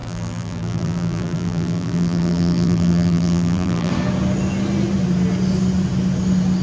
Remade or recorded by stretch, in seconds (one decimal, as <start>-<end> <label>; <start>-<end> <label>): 0.0-3.9 remade; 3.9-6.6 recorded